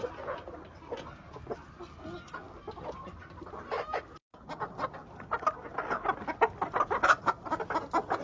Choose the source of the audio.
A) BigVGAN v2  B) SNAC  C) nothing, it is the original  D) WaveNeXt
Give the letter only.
C